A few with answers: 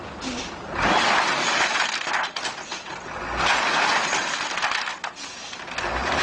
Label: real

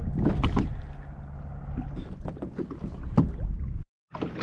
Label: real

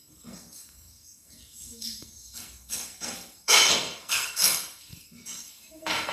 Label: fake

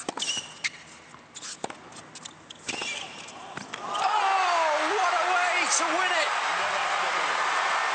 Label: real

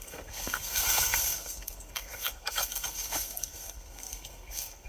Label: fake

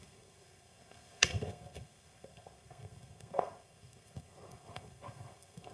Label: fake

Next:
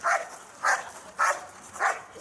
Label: real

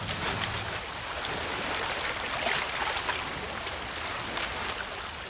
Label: real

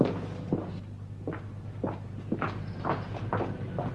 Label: real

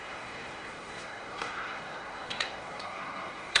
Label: fake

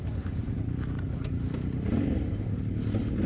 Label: real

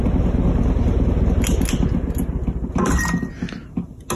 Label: real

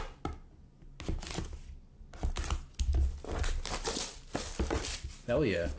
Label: real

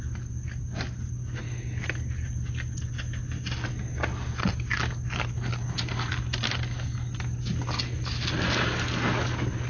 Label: real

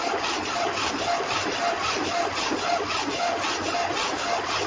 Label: real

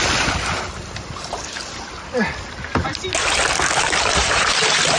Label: real